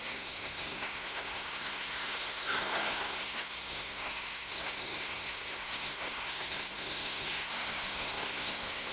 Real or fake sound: fake